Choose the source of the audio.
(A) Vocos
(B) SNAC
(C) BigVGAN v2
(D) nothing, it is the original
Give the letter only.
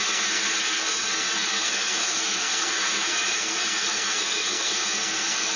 B